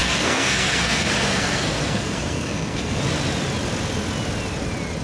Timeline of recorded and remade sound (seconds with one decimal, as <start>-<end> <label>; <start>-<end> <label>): 0.0-3.0 remade; 3.0-5.0 recorded